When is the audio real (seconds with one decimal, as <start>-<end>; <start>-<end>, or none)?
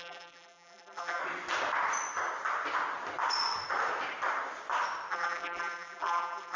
1.2-5.1